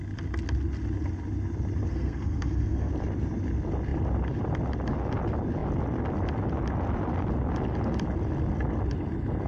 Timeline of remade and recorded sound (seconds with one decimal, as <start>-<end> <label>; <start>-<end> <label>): 0.0-1.9 recorded; 1.9-2.9 remade; 2.9-9.5 recorded

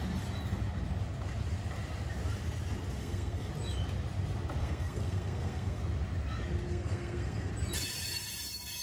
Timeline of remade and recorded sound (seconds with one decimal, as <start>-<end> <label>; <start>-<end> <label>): 0.0-3.0 recorded; 3.0-3.5 remade; 3.5-4.6 recorded; 4.6-5.8 remade; 5.8-6.7 recorded; 6.7-7.5 remade; 7.5-8.8 recorded

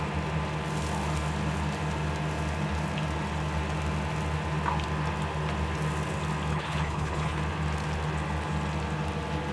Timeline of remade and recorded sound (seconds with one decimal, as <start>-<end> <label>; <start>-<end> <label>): 0.0-6.5 recorded; 6.5-7.4 remade; 7.4-9.5 recorded

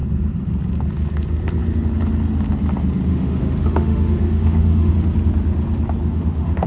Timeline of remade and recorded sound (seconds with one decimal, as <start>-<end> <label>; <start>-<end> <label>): 0.0-3.1 recorded; 3.1-4.9 remade; 4.9-6.0 recorded; 6.0-6.7 remade

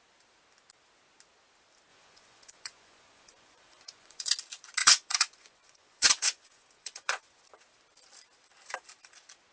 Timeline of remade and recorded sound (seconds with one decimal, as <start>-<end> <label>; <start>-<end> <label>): 0.0-1.9 recorded; 1.9-4.3 remade; 4.3-4.8 recorded; 4.8-7.4 remade; 7.4-9.5 recorded